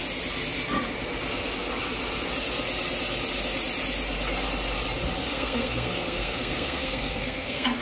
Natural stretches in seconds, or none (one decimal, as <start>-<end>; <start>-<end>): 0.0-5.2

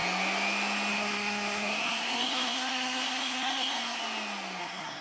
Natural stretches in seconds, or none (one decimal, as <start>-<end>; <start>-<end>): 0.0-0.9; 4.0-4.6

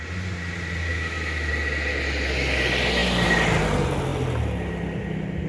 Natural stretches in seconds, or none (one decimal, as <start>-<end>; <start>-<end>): 0.0-0.9; 1.5-5.5